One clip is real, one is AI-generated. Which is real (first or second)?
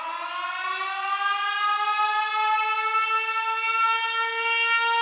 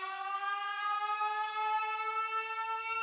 first